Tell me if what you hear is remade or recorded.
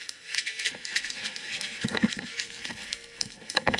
remade